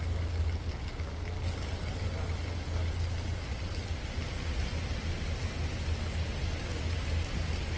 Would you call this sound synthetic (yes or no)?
no